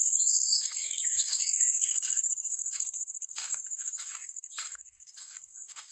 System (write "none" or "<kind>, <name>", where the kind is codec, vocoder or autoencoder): codec, DAC